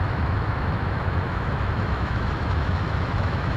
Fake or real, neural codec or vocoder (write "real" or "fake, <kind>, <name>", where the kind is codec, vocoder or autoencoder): fake, autoencoder, DAC-VAE